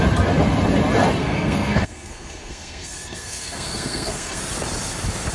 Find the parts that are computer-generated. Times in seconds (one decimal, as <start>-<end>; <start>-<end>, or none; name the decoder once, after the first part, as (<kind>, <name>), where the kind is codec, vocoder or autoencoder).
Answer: 1.2-4.4 (codec, SNAC)